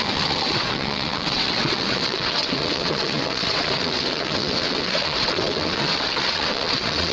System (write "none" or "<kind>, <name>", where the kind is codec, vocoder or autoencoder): vocoder, WaveNeXt